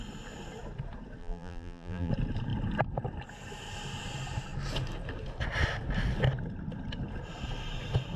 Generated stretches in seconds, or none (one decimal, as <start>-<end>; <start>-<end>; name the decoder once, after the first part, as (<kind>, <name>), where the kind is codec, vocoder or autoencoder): 1.2-2.1 (vocoder, BigVGAN v2)